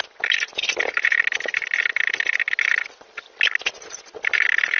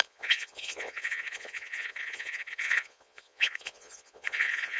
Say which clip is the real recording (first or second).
first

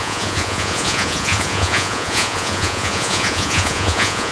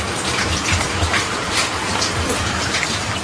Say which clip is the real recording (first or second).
second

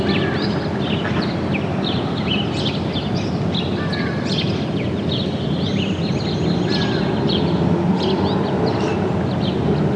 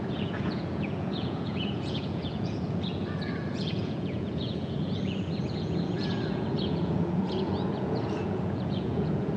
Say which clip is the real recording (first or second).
first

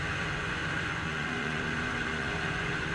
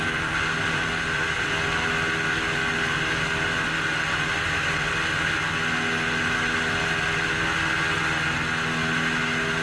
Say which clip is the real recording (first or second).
second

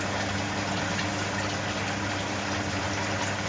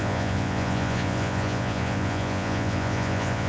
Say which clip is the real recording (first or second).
first